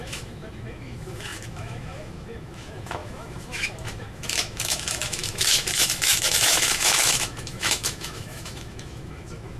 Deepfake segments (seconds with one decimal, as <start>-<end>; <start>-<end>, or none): 0.0-9.6